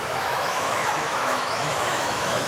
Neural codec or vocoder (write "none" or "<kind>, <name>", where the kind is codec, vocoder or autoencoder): autoencoder, DAC-VAE